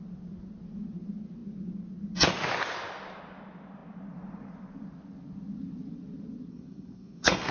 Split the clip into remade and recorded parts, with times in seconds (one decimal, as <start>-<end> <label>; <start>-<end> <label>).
0.0-6.5 recorded; 6.5-7.5 remade